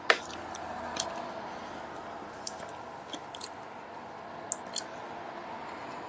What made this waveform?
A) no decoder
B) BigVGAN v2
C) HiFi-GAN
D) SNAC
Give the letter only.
A